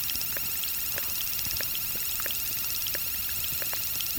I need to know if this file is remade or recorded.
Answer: recorded